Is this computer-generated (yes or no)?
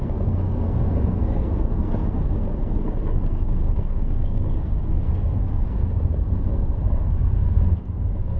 yes